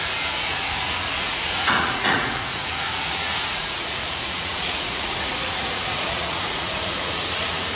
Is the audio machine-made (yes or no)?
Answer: yes